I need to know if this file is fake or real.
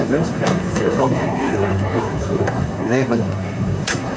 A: fake